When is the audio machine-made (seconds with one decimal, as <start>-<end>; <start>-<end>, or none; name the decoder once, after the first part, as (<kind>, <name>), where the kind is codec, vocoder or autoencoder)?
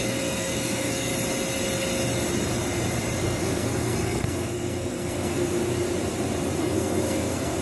0.0-1.1 (codec, SNAC); 3.2-5.6; 6.6-7.6